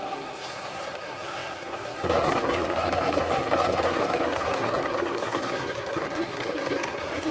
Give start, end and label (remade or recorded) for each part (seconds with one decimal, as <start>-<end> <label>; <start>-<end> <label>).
0.0-7.3 remade